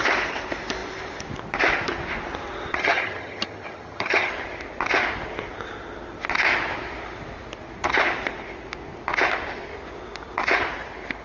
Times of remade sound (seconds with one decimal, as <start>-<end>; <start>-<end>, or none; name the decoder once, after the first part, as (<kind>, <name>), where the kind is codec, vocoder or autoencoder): 2.7-4.3 (vocoder, HiFi-GAN)